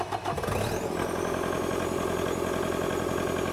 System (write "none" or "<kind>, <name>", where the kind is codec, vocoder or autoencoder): none